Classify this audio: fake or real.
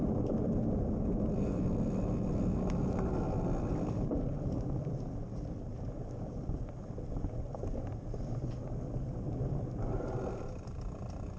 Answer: real